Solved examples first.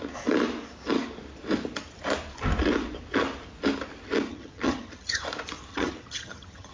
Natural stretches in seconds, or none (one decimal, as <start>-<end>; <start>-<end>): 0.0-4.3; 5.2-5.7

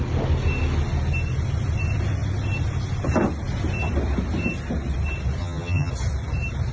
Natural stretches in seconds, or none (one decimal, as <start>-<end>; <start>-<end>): 0.0-5.4; 5.9-6.7

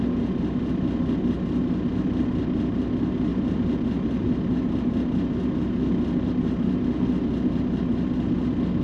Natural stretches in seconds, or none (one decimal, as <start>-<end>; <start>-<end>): 0.0-8.8

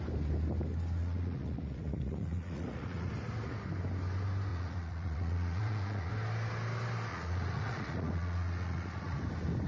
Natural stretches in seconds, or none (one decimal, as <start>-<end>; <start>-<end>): 0.0-1.0; 3.1-4.5; 6.1-7.1; 9.2-9.7

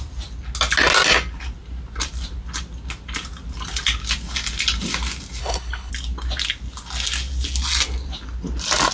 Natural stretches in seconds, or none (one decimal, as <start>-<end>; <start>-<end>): 0.0-5.4; 5.9-8.9

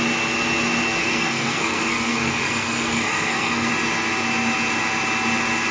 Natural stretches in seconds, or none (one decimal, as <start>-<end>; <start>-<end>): 0.0-1.0; 3.7-5.7